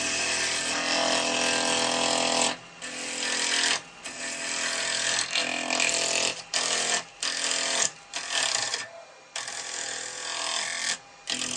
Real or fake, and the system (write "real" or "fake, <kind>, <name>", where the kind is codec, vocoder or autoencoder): real